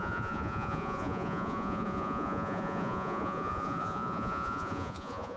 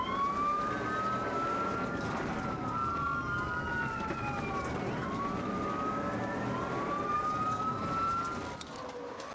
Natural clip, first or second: second